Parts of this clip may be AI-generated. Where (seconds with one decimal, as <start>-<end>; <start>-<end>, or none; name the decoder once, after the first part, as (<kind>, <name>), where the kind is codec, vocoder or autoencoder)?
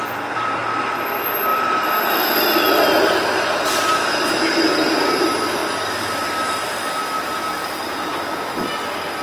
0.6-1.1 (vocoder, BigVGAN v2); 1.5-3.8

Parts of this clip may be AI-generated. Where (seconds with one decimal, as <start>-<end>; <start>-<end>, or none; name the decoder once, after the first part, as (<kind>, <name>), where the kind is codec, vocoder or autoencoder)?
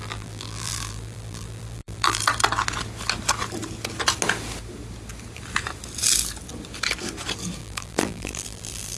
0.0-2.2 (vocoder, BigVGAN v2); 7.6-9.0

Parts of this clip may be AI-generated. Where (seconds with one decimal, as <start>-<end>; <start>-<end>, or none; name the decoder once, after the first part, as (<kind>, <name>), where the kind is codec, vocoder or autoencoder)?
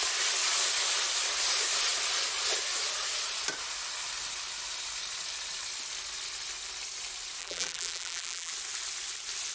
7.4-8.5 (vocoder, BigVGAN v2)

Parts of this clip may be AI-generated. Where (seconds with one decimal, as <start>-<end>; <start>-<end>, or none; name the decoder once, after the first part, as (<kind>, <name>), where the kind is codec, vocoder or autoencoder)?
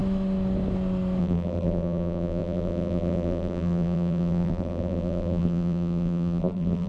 1.2-6.9 (vocoder, BigVGAN v2)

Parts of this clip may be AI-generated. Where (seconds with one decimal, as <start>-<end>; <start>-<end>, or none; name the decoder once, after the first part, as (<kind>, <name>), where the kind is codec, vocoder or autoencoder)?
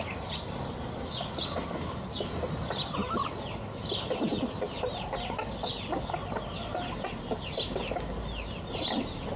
none